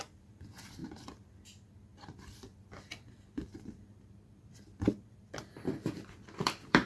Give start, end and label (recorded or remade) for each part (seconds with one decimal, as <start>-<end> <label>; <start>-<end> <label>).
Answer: 0.0-6.8 remade